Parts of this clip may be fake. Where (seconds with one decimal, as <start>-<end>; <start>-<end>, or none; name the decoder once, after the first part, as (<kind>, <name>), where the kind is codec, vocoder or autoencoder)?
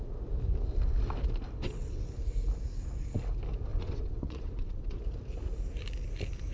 1.6-2.1 (vocoder, WaveNeXt); 3.7-5.0